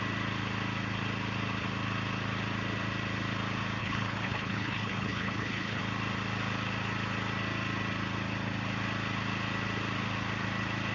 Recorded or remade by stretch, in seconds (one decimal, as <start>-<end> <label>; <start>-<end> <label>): 0.0-3.8 recorded; 3.8-5.8 remade; 5.8-10.9 recorded